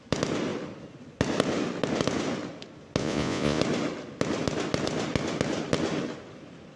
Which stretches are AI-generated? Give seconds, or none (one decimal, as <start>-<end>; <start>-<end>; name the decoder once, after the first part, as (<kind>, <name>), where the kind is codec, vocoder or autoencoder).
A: 3.0-3.6 (vocoder, Vocos)